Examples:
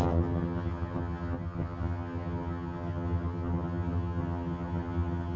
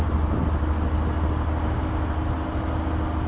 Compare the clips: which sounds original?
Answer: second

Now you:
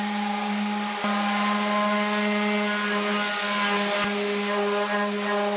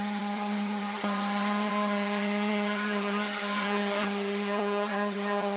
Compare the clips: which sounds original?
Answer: first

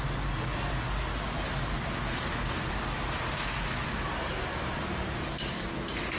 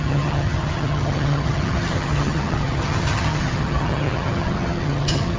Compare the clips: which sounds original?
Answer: first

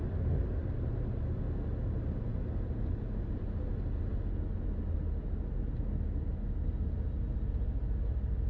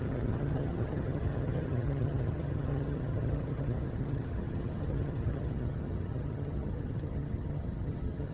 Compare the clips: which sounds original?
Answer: first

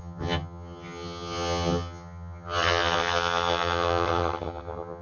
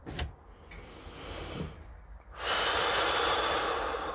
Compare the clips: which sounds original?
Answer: second